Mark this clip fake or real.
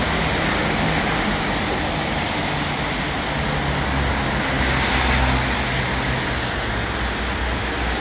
real